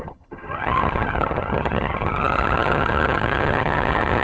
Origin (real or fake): fake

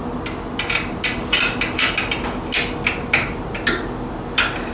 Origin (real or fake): real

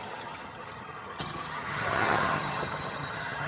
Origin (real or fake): fake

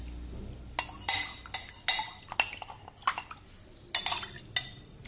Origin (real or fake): real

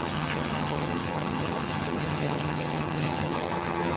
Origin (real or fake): fake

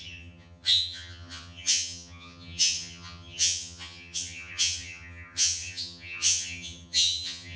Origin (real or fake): fake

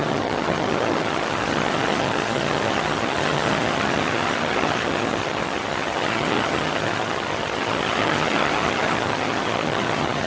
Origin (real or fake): fake